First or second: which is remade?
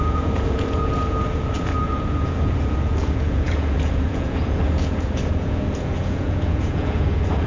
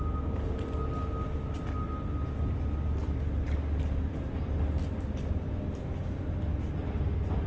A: first